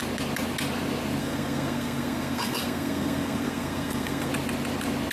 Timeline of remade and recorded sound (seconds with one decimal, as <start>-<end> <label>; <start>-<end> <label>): 0.0-1.2 recorded; 1.2-4.3 remade; 4.3-5.1 recorded